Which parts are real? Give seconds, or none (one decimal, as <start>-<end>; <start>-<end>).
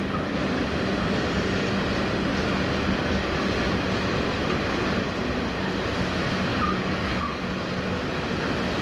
0.0-6.5; 7.4-8.8